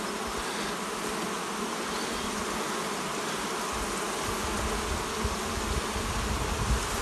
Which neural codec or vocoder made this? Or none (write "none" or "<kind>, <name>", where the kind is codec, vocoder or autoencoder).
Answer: none